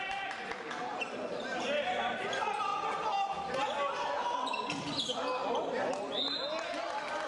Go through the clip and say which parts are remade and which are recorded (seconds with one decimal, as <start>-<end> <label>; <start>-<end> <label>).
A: 0.0-7.3 recorded